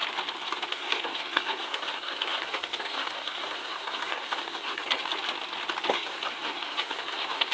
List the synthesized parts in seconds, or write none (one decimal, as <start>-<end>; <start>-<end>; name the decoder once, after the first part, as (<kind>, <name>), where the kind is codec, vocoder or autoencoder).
0.7-5.1 (codec, SNAC); 5.9-7.5

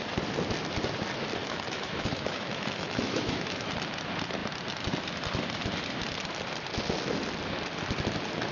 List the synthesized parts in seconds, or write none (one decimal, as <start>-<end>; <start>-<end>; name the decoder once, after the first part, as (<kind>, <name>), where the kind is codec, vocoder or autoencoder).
1.4-3.7 (autoencoder, DAC-VAE)

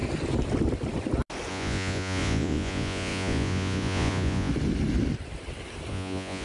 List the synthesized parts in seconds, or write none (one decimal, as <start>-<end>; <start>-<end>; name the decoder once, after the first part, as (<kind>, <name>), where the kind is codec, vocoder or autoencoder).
1.5-4.5 (vocoder, Vocos); 5.9-6.4

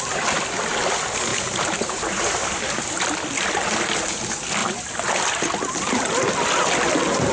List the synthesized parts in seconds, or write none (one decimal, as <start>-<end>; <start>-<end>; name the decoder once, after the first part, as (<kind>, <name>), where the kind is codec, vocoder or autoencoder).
1.3-3.7 (vocoder, BigVGAN v2); 4.6-6.3

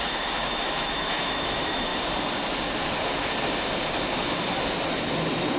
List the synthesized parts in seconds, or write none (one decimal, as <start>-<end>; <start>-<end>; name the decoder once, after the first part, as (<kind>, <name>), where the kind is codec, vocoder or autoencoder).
0.0-1.9 (autoencoder, DAC-VAE)

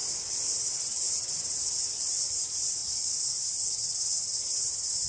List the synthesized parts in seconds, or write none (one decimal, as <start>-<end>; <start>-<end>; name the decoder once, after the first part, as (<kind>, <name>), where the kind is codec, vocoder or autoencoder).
none

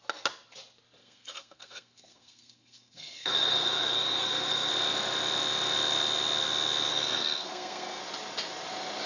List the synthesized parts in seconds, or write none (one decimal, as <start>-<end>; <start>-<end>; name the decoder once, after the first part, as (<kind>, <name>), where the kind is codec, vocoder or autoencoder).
1.0-4.7 (codec, SNAC); 6.9-8.0